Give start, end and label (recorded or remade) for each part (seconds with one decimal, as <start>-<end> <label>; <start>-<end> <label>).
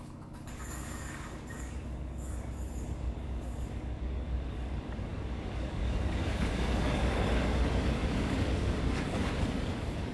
0.0-10.1 remade